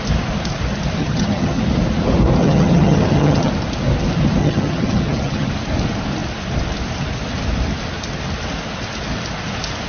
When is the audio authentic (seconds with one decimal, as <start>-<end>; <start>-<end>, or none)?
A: 0.0-1.0; 1.6-2.4; 3.5-4.4; 5.5-9.9